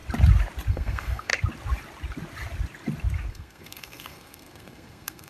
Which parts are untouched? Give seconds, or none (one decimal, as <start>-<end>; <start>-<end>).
0.0-0.7; 1.3-3.3